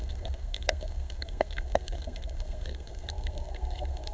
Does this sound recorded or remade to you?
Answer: remade